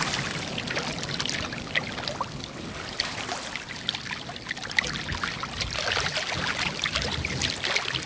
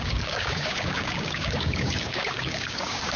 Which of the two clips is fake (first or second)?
second